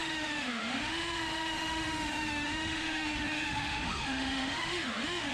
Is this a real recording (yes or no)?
no